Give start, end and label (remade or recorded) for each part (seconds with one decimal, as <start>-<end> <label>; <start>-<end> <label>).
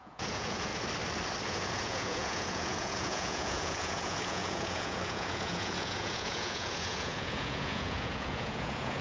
0.0-0.7 remade; 0.7-1.5 recorded; 1.5-9.0 remade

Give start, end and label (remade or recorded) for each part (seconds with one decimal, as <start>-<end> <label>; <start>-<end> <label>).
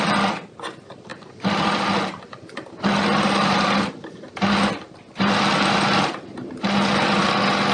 0.0-7.7 recorded